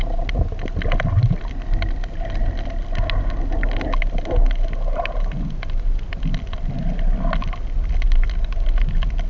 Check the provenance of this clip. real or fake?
real